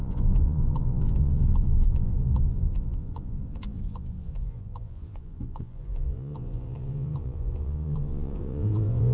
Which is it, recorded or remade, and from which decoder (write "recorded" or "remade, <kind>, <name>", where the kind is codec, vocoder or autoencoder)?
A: remade, vocoder, Vocos